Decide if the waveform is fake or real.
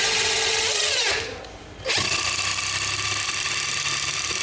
real